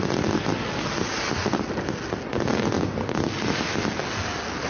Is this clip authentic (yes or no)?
yes